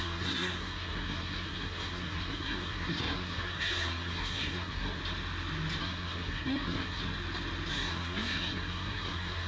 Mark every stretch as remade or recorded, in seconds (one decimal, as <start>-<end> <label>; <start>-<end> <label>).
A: 0.0-5.0 remade; 5.0-5.8 recorded; 5.8-7.0 remade; 7.0-7.7 recorded; 7.7-9.5 remade